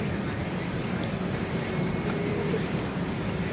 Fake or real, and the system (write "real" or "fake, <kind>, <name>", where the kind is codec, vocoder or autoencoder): real